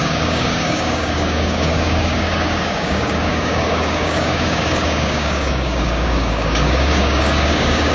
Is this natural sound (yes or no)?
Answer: no